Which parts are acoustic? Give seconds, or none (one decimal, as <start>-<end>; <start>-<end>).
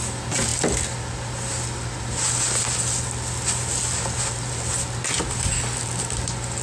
0.0-6.6